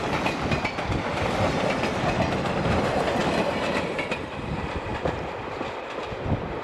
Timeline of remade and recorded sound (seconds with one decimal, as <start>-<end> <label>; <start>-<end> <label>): 0.0-6.6 recorded